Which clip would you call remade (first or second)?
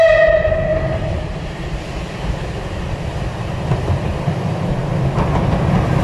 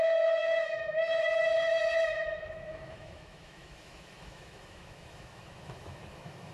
second